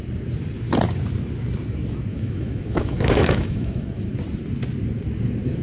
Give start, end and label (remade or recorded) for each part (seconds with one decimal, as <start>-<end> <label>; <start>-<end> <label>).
0.0-2.1 recorded; 2.1-4.0 remade; 4.0-5.6 recorded